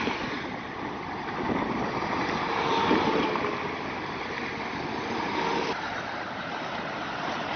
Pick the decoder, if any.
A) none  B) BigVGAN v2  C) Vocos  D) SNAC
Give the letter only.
A